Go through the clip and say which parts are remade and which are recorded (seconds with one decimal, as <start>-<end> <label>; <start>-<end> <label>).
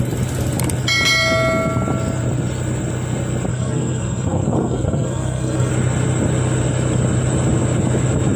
0.0-3.5 recorded; 3.5-5.7 remade; 5.7-8.4 recorded